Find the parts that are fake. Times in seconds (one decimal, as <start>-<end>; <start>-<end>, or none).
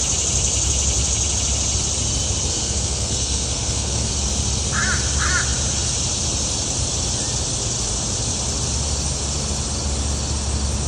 2.5-4.1